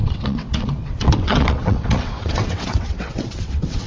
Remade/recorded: remade